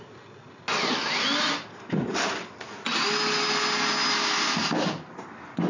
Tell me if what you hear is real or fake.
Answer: real